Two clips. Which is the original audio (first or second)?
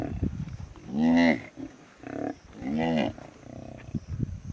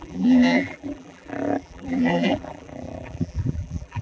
first